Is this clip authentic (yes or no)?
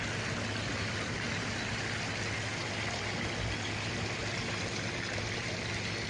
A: yes